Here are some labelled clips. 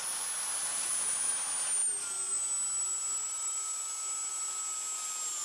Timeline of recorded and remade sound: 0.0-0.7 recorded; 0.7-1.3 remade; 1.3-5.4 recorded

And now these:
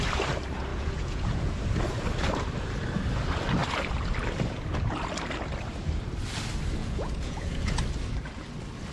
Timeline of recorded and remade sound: 0.0-0.7 recorded; 0.7-1.5 remade; 1.5-6.8 recorded; 6.8-7.8 remade; 7.8-8.9 recorded

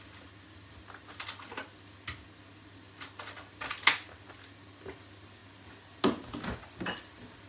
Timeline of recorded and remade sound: 0.0-7.5 recorded

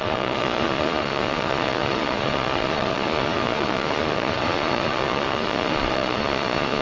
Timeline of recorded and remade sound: 0.0-6.8 remade

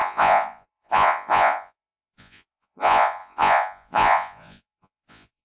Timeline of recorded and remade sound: 0.0-5.4 remade

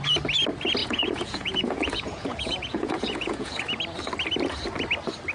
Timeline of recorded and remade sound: 0.0-0.8 recorded; 0.8-3.6 remade; 3.6-5.3 recorded